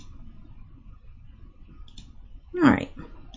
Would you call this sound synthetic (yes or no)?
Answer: no